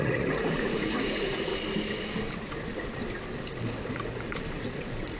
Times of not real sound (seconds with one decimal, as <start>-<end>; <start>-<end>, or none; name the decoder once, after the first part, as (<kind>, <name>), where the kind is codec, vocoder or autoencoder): 0.0-1.5 (vocoder, Vocos); 2.4-3.0; 3.9-5.2